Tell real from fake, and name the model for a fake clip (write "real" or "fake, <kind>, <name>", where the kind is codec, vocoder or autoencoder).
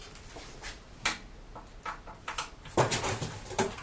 real